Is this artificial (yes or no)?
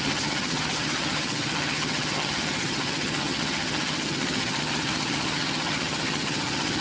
yes